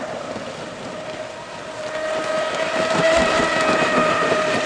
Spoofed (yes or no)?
no